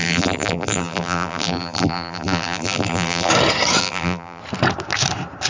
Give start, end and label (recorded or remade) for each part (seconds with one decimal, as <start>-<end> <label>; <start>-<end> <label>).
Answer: 0.0-3.3 remade; 3.3-3.8 recorded; 3.8-4.4 remade; 4.4-5.5 recorded